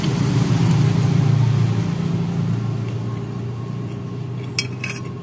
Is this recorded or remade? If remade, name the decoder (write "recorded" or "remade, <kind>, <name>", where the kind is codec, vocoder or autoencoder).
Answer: recorded